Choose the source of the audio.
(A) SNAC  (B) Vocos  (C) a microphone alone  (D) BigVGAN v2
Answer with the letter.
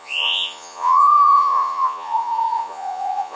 B